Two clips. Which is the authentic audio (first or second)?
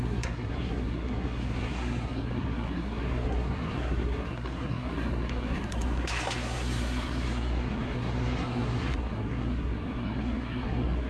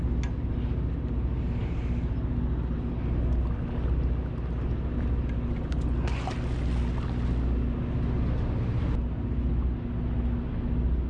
second